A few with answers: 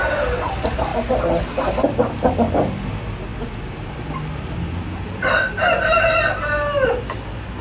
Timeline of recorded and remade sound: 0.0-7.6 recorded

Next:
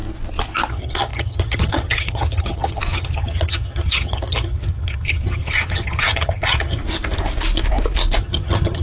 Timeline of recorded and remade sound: 0.0-0.7 recorded; 0.7-6.8 remade; 6.8-8.2 recorded; 8.2-8.8 remade

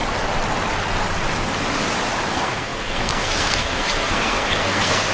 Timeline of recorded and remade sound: 0.0-2.3 recorded; 2.3-5.1 remade

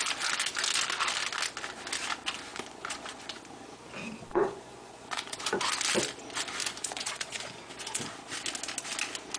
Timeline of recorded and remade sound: 0.0-2.5 recorded; 2.5-3.4 remade; 3.4-4.3 recorded; 4.3-5.6 remade; 5.6-6.6 recorded; 6.6-8.0 remade; 8.0-9.4 recorded

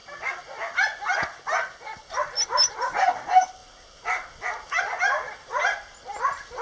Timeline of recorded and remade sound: 0.0-6.6 recorded

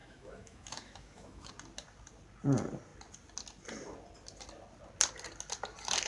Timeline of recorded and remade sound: 0.0-1.5 remade; 1.5-6.1 recorded

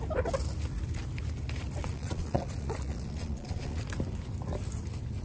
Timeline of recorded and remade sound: 0.0-1.8 recorded; 1.8-3.8 remade; 3.8-5.2 recorded